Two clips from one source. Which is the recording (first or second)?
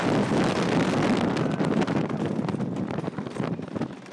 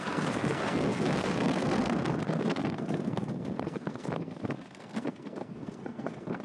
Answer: first